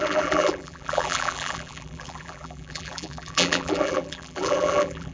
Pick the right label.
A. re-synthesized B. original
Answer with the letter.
A